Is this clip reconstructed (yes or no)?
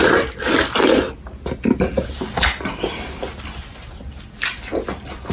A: no